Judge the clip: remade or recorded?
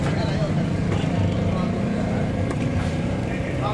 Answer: recorded